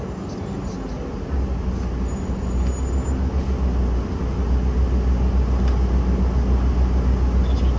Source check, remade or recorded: recorded